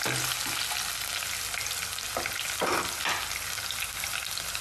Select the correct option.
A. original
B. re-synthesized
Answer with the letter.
A